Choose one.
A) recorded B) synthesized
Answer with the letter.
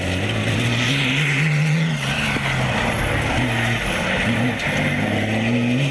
A